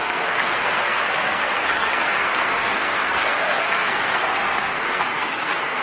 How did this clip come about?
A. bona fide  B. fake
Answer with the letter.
B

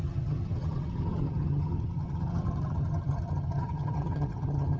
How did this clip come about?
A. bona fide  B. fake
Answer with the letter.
B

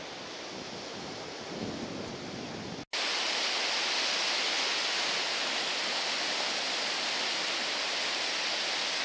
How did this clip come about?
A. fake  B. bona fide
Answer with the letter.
B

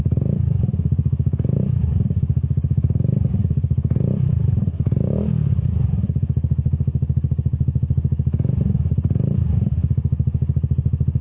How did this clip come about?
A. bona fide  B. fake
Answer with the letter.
B